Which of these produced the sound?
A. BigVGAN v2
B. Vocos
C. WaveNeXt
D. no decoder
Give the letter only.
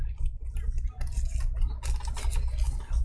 D